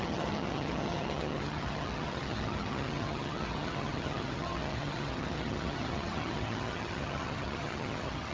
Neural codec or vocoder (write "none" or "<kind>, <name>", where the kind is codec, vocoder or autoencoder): vocoder, HiFi-GAN